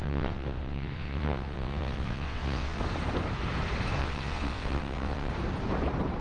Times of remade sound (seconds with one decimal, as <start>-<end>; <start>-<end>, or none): 0.0-2.8; 4.0-5.3